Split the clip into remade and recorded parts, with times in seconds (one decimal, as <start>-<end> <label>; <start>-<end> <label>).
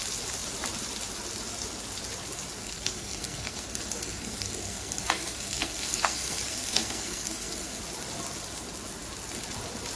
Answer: 0.0-2.6 recorded; 2.6-7.8 remade; 7.8-10.0 recorded